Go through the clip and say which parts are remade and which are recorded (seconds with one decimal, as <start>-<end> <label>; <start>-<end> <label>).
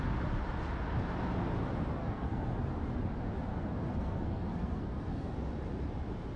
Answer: 0.0-2.0 recorded; 2.0-2.6 remade; 2.6-3.5 recorded; 3.5-5.5 remade; 5.5-6.4 recorded